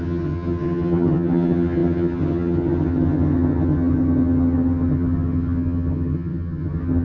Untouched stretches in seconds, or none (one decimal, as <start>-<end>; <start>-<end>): none